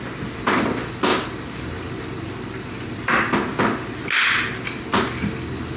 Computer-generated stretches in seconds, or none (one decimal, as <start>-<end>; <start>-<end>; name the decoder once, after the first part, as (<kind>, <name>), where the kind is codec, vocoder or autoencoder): 1.1-3.4 (vocoder, BigVGAN v2)